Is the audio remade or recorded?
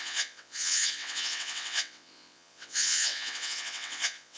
remade